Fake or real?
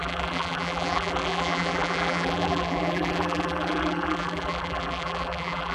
fake